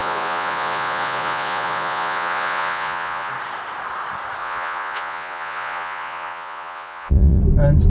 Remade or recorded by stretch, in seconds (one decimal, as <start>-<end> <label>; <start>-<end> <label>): 0.0-3.3 remade; 3.3-4.4 recorded; 4.4-7.4 remade; 7.4-7.9 recorded